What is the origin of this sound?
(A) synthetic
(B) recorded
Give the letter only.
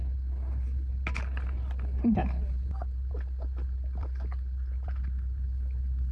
B